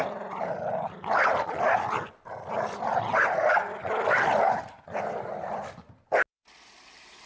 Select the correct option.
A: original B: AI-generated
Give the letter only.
A